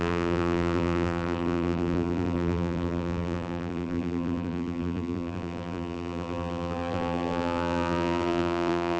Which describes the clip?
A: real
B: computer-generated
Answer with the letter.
B